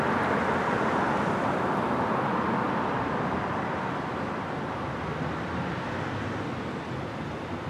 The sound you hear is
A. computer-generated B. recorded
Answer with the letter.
B